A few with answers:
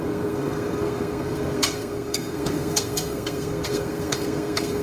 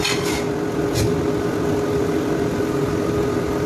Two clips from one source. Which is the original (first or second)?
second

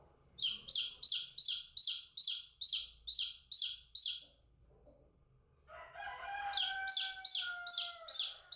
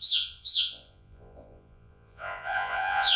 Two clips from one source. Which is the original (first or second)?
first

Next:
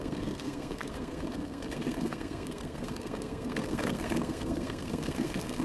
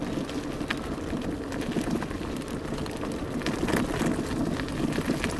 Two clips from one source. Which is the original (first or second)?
second